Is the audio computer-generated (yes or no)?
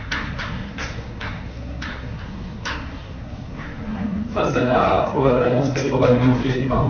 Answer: yes